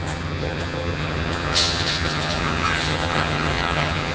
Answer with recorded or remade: remade